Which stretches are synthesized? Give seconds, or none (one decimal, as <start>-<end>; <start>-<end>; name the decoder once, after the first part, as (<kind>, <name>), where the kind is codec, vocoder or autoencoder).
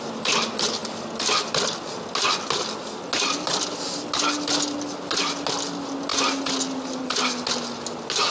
none